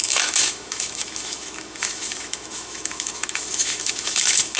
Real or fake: fake